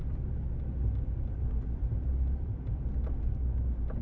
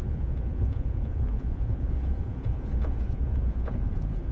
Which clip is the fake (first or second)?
second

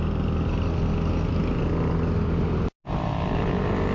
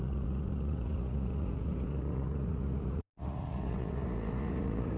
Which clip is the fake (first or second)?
second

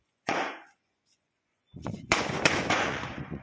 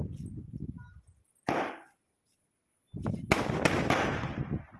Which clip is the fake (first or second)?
first